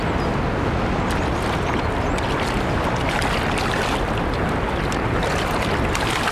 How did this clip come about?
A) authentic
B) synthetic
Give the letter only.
A